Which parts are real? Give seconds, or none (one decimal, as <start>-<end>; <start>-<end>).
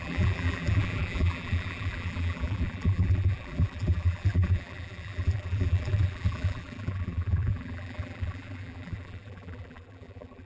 none